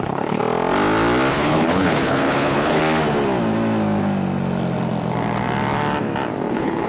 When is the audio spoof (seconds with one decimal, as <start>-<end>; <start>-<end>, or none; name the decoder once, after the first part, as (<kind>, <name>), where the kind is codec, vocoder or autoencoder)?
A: 0.0-0.4 (codec, HILCodec); 1.3-2.8; 6.5-6.9